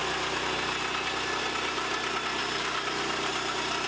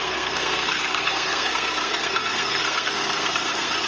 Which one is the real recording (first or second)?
first